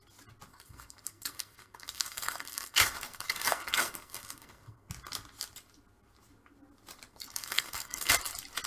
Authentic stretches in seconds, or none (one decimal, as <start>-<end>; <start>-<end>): 0.0-0.5; 4.9-7.1; 8.1-8.7